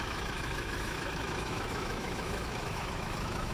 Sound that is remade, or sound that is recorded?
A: remade